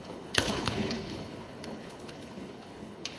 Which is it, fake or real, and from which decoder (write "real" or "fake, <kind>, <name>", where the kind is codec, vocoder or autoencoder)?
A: fake, codec, HILCodec